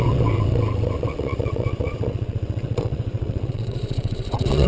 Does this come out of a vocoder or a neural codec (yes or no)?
yes